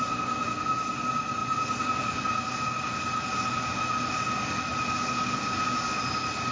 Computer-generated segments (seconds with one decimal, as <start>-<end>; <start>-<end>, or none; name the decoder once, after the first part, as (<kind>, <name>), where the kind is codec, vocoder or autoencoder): none